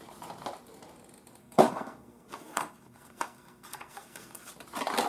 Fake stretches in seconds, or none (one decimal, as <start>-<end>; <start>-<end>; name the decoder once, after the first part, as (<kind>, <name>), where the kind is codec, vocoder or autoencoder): 1.4-4.5 (codec, SNAC)